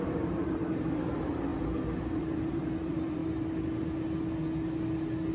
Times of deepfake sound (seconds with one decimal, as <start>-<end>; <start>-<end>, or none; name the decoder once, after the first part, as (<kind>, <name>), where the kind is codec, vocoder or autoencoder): 0.0-1.5 (vocoder, BigVGAN v2); 2.4-3.2